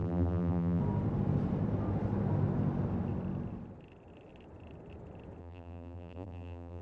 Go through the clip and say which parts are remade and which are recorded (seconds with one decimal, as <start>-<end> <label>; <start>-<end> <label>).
0.0-0.8 remade; 0.8-5.4 recorded; 5.4-6.8 remade

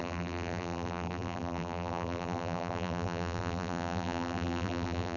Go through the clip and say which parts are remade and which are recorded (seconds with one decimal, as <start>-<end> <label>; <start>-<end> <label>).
0.0-5.2 remade